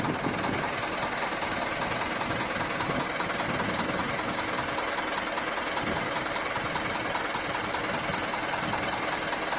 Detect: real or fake real